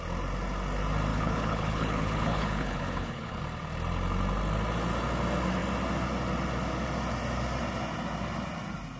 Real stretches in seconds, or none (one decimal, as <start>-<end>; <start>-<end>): 0.0-1.1; 3.4-9.0

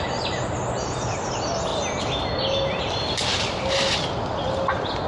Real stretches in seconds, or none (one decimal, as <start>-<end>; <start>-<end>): 1.7-5.1

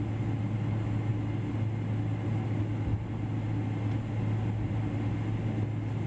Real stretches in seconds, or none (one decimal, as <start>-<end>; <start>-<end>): 0.0-6.1

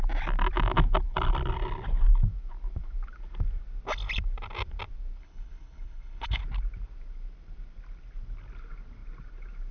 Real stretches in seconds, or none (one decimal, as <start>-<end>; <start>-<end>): 0.0-5.2; 6.4-9.7

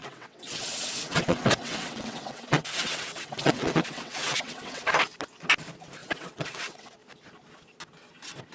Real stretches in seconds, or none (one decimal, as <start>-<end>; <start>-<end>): 4.9-6.0; 6.9-8.5